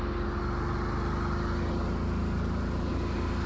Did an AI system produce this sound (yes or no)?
no